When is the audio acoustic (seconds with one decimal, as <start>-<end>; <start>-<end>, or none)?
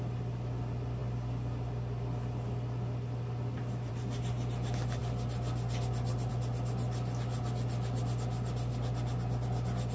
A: 0.0-9.9